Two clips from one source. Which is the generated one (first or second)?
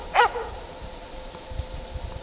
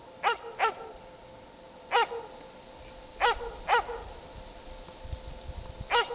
first